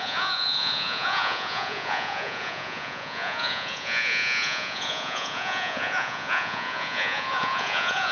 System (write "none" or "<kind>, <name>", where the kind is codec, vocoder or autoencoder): vocoder, Vocos